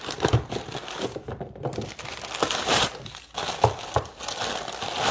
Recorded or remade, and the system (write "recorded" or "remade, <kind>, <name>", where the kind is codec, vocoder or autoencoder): recorded